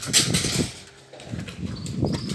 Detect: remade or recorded recorded